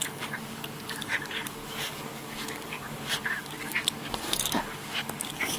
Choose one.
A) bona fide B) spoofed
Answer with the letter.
B